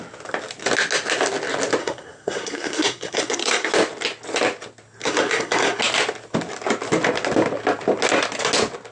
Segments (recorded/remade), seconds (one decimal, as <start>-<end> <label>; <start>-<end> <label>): 0.0-1.8 recorded; 1.8-3.7 remade; 3.7-5.0 recorded; 5.0-5.8 remade; 5.8-8.9 recorded